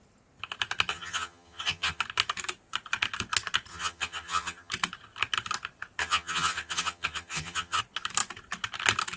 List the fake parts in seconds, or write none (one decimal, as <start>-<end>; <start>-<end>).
0.9-2.0; 3.7-4.7; 6.0-7.8